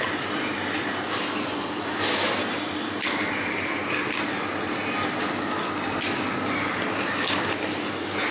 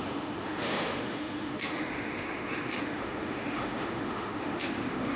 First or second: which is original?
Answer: first